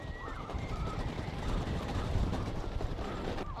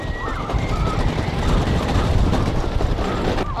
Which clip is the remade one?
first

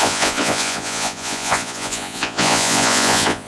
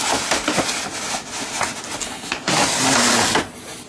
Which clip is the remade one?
first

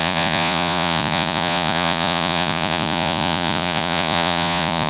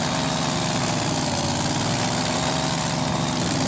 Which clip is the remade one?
first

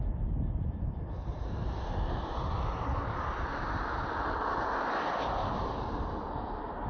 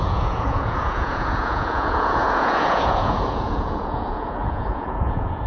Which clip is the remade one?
second